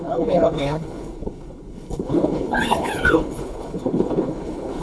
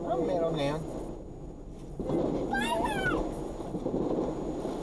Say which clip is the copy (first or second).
first